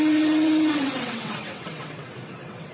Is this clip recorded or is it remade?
remade